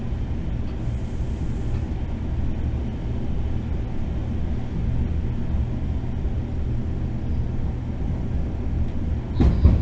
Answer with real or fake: real